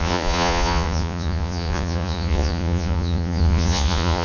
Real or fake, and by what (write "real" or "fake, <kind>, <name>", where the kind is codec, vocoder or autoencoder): fake, vocoder, Vocos